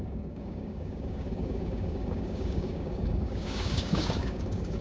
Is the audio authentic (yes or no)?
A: no